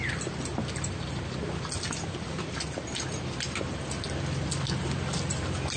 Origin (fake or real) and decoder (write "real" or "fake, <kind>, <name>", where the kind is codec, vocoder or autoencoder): real